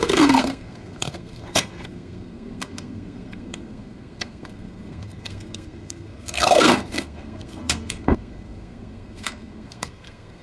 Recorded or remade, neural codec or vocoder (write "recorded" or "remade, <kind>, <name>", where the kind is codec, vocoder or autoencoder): remade, codec, SNAC